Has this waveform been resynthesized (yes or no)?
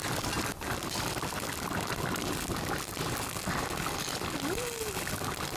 no